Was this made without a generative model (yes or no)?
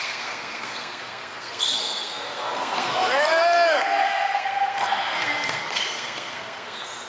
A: no